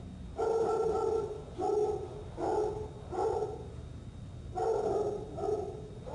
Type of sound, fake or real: real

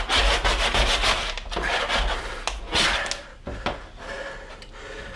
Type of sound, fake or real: real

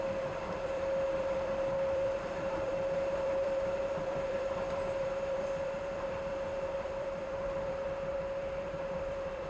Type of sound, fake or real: fake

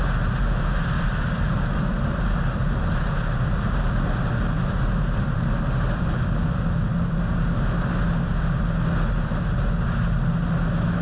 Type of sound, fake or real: real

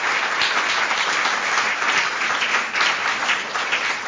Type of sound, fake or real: real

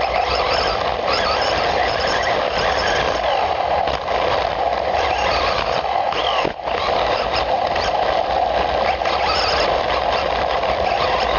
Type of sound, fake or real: real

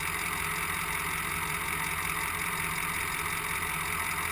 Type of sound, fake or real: real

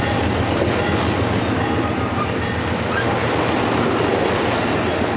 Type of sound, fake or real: real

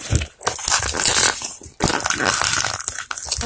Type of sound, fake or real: real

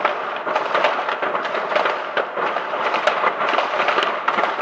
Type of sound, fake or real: real